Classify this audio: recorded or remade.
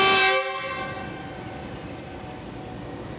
recorded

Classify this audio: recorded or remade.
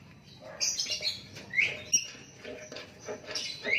recorded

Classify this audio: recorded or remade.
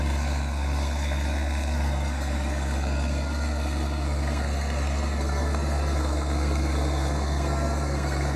remade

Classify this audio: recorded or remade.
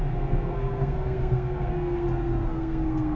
remade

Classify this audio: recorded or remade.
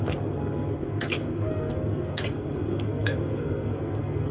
remade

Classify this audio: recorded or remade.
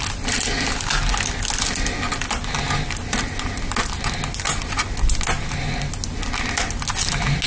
recorded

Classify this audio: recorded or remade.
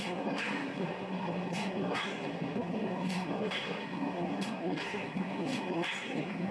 remade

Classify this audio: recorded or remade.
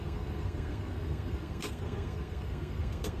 remade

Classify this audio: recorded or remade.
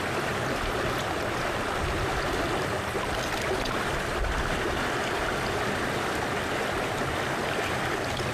recorded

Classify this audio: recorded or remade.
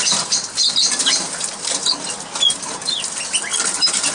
recorded